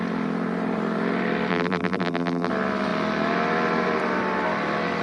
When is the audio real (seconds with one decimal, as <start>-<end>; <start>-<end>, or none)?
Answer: 0.0-1.5; 2.5-5.0